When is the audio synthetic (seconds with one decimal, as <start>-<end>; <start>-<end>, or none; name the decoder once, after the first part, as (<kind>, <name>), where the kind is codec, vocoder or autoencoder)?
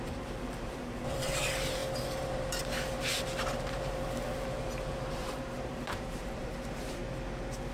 0.0-7.0 (vocoder, BigVGAN v2)